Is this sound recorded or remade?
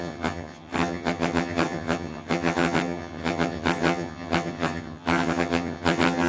remade